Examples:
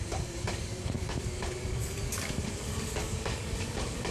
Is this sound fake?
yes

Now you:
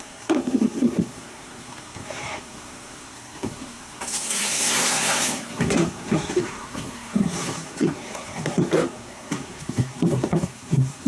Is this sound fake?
yes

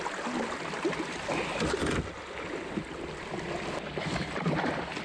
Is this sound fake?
no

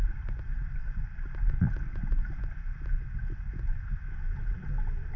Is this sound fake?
no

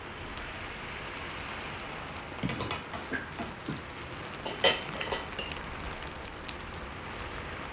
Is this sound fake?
no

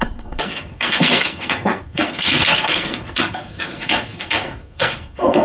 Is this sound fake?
yes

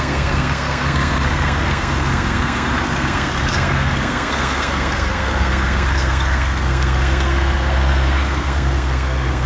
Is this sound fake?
yes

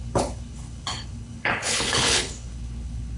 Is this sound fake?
yes